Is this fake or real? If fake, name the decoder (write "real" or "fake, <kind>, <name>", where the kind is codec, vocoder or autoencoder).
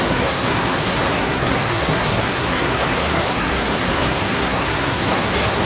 fake, codec, SNAC